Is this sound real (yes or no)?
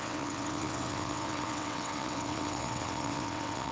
no